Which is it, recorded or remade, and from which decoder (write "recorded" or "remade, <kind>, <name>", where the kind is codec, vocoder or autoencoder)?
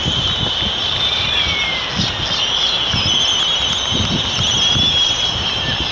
recorded